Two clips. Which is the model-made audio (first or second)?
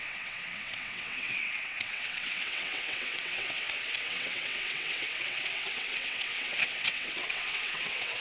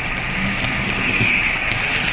first